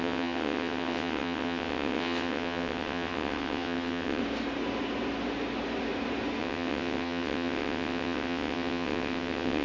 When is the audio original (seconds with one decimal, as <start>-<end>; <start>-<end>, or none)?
4.2-6.4